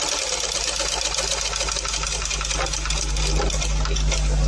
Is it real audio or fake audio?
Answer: real